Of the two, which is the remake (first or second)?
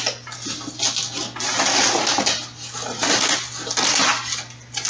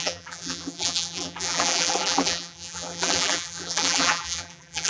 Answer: second